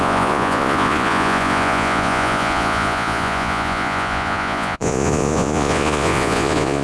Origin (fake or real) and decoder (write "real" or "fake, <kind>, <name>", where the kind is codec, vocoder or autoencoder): fake, vocoder, Vocos